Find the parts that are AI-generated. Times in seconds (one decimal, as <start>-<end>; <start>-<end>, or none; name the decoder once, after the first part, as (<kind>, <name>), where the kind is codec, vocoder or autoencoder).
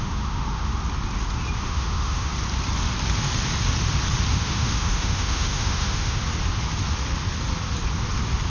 0.0-0.7 (autoencoder, DAC-VAE); 1.6-2.3; 4.3-6.2